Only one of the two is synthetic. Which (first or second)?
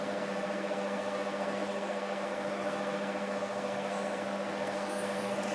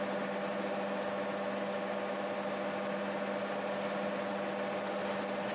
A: first